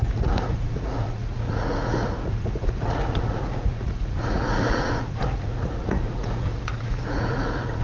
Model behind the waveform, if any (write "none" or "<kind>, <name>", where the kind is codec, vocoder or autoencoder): vocoder, Vocos